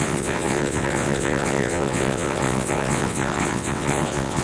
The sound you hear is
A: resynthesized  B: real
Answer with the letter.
A